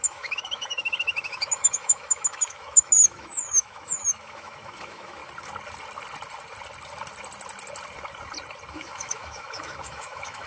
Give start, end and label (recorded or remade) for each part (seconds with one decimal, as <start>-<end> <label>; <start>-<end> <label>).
0.0-5.2 remade; 5.2-8.7 recorded; 8.7-10.5 remade

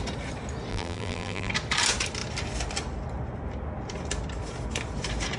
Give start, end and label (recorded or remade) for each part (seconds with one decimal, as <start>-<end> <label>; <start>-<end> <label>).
0.0-0.7 recorded; 0.7-1.5 remade; 1.5-5.4 recorded